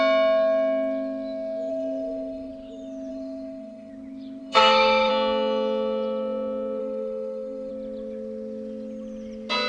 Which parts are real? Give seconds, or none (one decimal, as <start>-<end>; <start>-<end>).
0.0-1.7; 2.5-3.1; 3.9-4.4; 5.1-6.8; 7.7-9.7